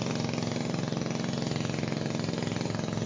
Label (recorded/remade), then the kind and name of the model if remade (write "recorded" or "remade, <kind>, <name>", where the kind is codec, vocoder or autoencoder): recorded